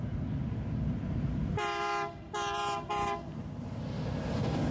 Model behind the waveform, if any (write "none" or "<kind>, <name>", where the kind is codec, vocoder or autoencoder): none